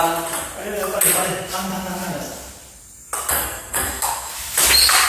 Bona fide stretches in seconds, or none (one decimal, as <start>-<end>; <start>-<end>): 0.0-3.3; 4.3-5.1